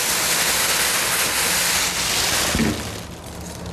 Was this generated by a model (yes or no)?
no